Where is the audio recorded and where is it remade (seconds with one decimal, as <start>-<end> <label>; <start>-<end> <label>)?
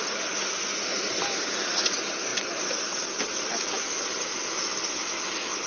0.0-5.7 recorded